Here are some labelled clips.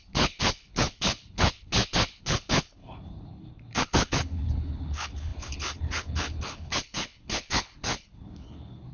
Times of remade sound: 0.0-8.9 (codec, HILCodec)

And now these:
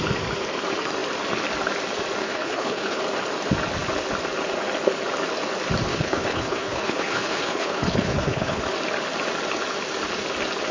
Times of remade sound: 2.2-3.0 (codec, HILCodec); 5.9-8.6

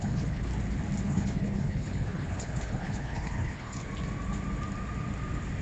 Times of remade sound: 0.0-0.5 (codec, HILCodec); 1.0-3.9

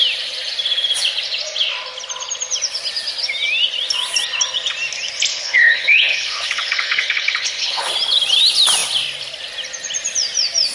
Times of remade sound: 5.3-7.9 (codec, HILCodec)

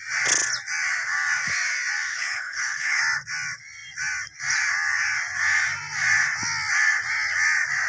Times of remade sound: 2.1-3.0 (codec, HILCodec)

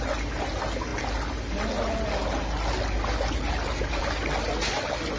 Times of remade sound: none

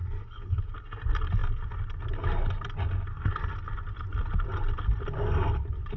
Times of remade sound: 0.0-0.7 (codec, HILCodec)

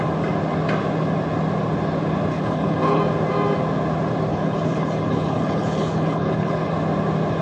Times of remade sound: 2.3-3.0 (codec, HILCodec); 4.3-6.7